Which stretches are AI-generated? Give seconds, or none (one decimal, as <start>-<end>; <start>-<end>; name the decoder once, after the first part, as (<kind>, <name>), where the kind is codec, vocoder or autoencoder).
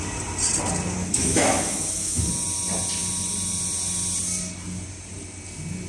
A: 1.0-2.3 (autoencoder, DAC-VAE)